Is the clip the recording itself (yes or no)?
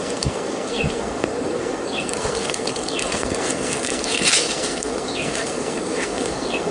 no